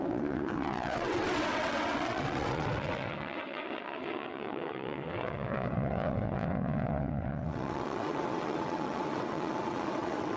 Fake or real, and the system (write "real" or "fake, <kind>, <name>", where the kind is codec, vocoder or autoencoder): fake, vocoder, WaveNeXt